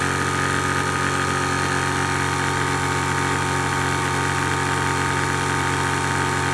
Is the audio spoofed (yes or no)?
no